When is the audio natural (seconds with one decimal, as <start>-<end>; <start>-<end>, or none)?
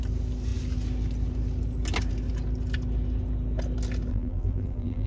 0.0-4.1